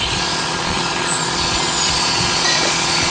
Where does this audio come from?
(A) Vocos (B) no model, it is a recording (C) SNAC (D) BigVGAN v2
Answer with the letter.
A